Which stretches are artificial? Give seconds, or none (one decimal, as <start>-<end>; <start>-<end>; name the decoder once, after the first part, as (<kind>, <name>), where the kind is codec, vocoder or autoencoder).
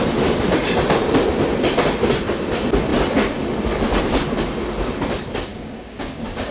5.5-6.5 (codec, DAC)